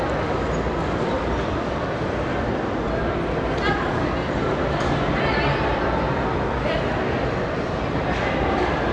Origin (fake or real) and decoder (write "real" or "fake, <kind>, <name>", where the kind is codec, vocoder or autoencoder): real